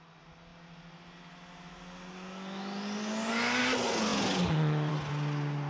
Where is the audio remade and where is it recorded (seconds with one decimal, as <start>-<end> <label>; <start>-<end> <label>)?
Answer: 0.0-5.7 recorded